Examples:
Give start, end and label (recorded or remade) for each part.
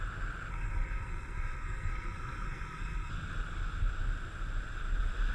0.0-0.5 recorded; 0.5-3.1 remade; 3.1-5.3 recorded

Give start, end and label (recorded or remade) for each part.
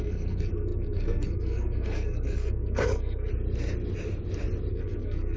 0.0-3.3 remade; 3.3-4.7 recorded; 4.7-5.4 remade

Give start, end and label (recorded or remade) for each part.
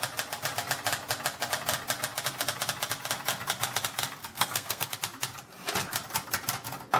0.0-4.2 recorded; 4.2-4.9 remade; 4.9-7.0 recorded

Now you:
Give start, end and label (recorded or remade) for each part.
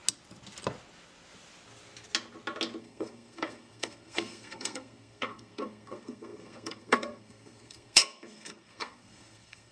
0.0-2.8 recorded; 2.8-9.7 remade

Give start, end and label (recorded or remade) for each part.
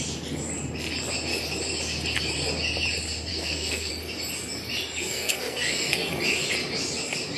0.0-3.3 recorded; 3.3-3.9 remade; 3.9-5.0 recorded; 5.0-6.1 remade; 6.1-7.4 recorded